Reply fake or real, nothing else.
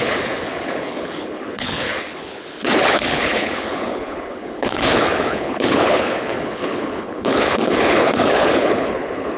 fake